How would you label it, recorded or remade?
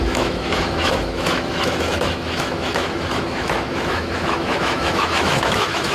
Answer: remade